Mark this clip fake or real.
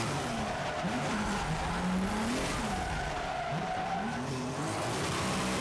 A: real